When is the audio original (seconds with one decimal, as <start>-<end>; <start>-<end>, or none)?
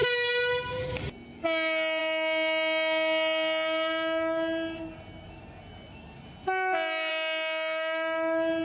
0.0-8.6